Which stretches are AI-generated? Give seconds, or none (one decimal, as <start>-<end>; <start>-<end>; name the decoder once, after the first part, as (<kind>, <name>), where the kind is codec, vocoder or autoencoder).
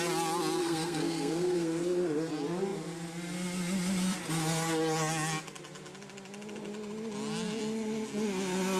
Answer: 0.6-2.2 (codec, SNAC)